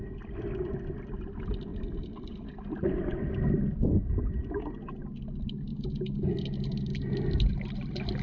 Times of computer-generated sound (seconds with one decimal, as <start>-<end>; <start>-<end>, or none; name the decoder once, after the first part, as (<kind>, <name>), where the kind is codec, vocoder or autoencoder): 5.7-6.3 (vocoder, Vocos)